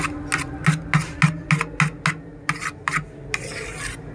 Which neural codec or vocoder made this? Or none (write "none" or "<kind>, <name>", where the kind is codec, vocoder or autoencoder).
none